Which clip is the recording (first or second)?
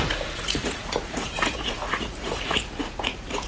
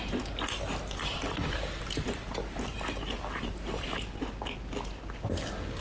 second